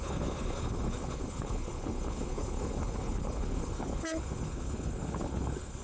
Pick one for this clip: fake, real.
fake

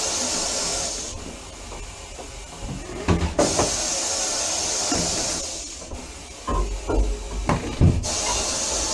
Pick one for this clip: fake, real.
real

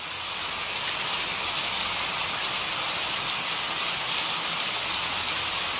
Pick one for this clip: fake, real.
real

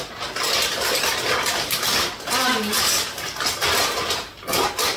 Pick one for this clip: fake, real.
real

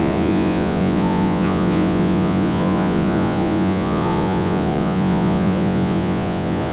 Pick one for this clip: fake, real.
fake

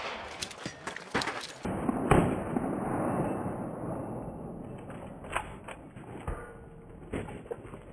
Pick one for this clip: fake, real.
real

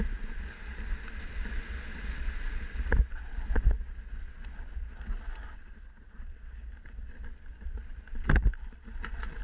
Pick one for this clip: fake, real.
real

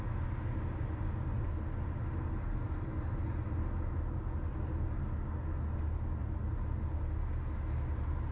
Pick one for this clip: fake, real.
real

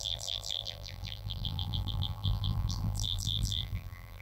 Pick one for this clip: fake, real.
fake